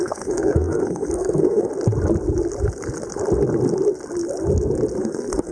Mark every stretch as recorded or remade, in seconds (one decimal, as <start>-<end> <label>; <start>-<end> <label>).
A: 0.0-1.7 remade; 1.7-5.0 recorded; 5.0-5.5 remade